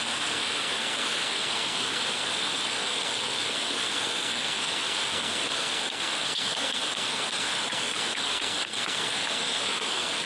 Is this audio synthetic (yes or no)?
yes